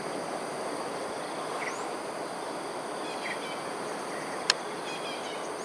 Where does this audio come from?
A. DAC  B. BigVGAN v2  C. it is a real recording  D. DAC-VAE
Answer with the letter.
C